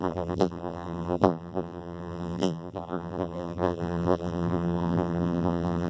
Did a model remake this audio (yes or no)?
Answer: yes